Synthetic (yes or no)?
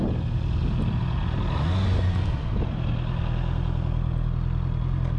no